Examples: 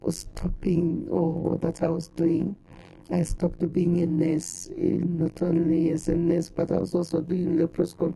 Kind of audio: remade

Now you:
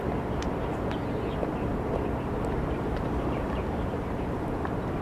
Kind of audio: remade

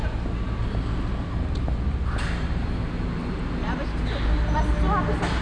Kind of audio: recorded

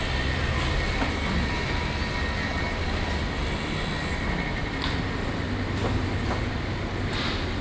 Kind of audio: recorded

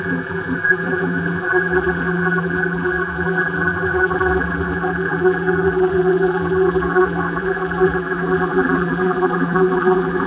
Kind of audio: remade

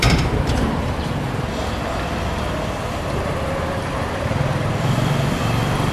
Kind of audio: remade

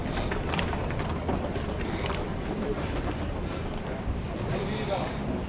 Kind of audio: remade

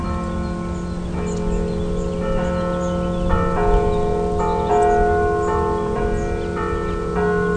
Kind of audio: recorded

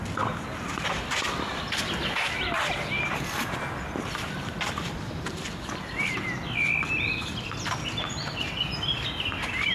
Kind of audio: recorded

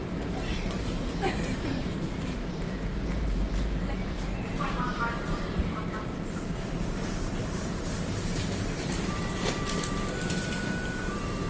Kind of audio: remade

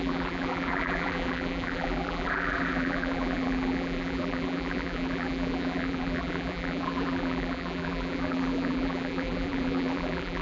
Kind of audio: remade